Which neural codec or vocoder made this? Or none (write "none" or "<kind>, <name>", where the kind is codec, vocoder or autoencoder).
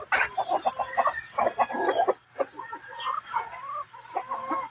none